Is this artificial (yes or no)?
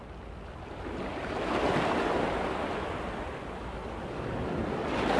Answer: no